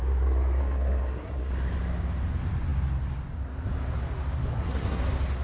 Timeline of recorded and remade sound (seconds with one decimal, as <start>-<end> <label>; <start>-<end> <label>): 0.0-0.6 recorded; 0.6-1.5 remade; 1.5-4.5 recorded; 4.5-5.0 remade; 5.0-5.4 recorded